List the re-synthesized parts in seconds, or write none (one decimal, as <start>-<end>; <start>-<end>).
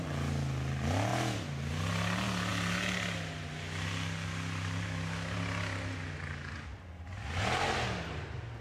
none